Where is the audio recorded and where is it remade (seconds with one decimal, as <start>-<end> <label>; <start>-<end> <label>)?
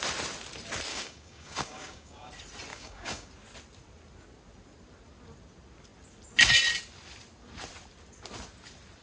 0.0-0.9 recorded; 0.9-2.3 remade; 2.3-2.7 recorded; 2.7-3.3 remade; 3.3-9.0 recorded